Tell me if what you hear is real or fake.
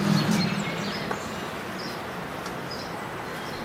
real